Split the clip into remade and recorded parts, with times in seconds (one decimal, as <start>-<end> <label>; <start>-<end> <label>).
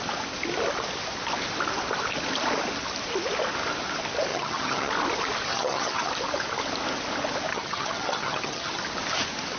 0.0-4.3 recorded; 4.3-4.9 remade; 4.9-5.5 recorded; 5.5-6.1 remade; 6.1-7.5 recorded; 7.5-8.8 remade; 8.8-9.6 recorded